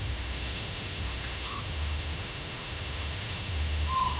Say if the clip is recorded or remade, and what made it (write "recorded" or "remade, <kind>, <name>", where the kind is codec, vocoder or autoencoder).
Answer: remade, autoencoder, DAC-VAE